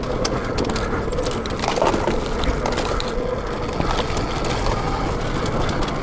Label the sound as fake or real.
real